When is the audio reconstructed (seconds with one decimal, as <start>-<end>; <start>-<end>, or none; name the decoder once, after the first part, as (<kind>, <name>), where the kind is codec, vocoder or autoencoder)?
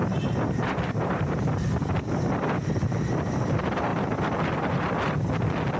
0.0-1.6 (vocoder, BigVGAN v2); 3.9-4.9